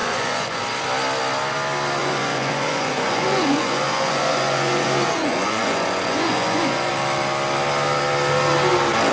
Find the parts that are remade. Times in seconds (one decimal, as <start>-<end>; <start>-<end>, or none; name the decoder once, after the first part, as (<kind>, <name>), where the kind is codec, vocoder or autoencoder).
0.0-0.6 (vocoder, Vocos); 2.0-6.9